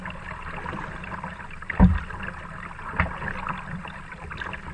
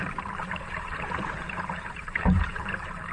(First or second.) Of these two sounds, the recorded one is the first